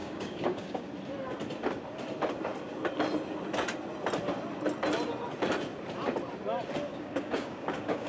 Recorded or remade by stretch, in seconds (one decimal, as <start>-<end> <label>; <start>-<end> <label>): 0.0-0.9 remade; 0.9-6.9 recorded; 6.9-8.1 remade